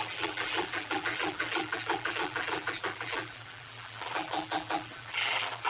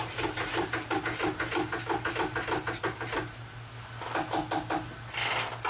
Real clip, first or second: second